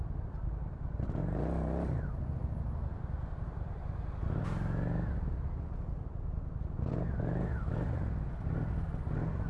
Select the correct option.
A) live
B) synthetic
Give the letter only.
A